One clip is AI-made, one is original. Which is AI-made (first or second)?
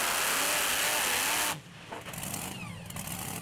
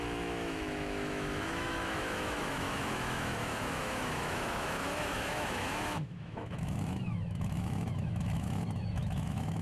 second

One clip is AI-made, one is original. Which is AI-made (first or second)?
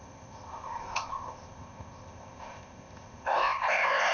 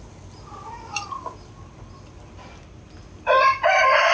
first